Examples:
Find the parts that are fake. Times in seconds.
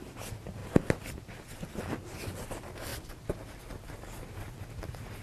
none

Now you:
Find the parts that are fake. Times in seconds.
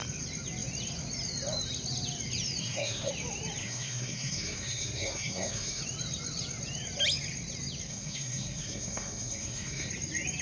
2.6-3.1 (codec, SNAC); 3.6-5.8; 7.9-9.9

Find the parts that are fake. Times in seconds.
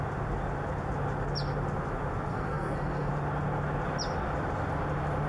2.3-3.1 (codec, SNAC)